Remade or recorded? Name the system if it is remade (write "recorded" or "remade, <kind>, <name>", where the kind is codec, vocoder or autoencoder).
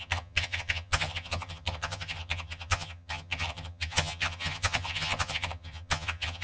remade, vocoder, HiFi-GAN